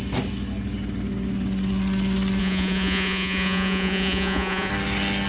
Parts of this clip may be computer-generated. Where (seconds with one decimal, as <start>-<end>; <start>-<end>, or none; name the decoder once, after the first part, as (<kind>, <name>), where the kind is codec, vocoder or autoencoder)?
2.4-4.7 (vocoder, Vocos)